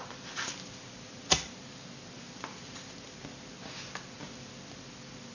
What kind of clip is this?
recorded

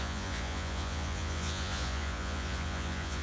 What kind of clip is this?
remade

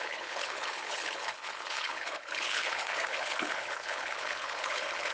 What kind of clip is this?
remade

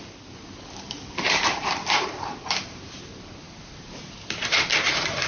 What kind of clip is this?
remade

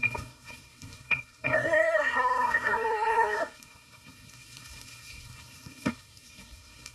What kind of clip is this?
remade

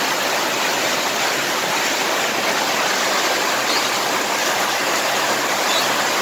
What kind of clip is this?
recorded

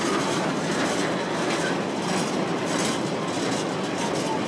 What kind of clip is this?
recorded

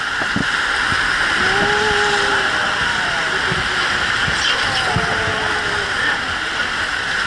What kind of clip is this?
recorded